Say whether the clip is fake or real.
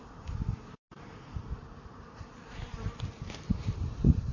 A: fake